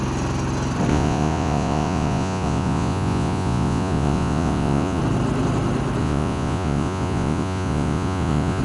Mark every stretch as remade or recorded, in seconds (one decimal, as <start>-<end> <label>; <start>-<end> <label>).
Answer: 0.0-0.9 recorded; 0.9-5.0 remade; 5.0-6.0 recorded; 6.0-8.6 remade